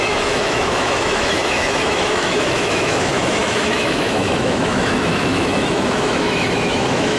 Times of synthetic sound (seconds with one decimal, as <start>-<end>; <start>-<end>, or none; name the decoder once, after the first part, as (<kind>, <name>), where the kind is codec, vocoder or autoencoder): 0.0-7.2 (autoencoder, DAC-VAE)